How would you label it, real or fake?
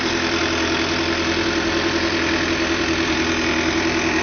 fake